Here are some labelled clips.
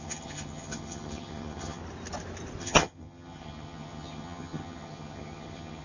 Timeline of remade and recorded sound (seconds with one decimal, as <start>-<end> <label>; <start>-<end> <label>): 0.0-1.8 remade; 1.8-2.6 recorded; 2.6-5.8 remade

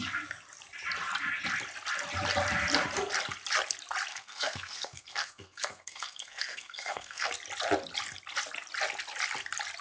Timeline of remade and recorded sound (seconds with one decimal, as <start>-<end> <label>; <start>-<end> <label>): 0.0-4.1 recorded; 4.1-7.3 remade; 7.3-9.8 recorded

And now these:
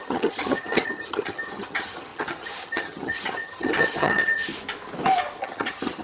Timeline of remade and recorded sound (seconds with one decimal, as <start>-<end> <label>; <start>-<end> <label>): 0.0-4.5 remade; 4.5-5.4 recorded; 5.4-6.0 remade